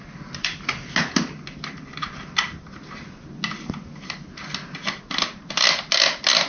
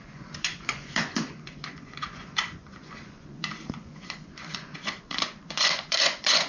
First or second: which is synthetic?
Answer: second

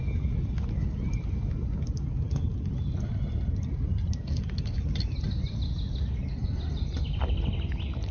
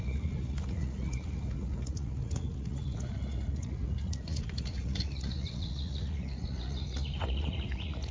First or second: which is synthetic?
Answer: second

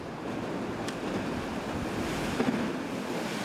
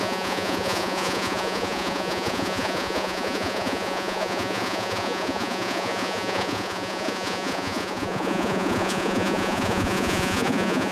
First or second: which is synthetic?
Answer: second